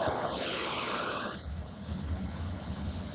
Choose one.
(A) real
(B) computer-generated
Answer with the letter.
B